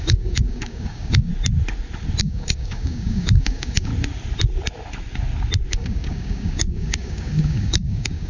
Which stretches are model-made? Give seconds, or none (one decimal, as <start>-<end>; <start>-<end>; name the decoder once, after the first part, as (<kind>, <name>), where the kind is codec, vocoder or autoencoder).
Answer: 0.0-1.3 (codec, DAC); 2.2-3.9; 5.7-8.3